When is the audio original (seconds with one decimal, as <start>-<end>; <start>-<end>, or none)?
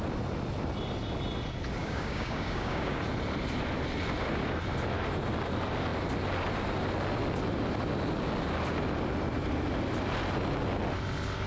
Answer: 0.0-1.8; 3.0-11.5